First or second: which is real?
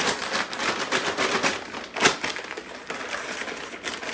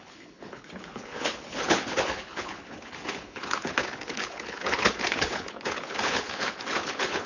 first